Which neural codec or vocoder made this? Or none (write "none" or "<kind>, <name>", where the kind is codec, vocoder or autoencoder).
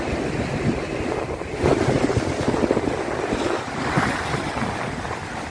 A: none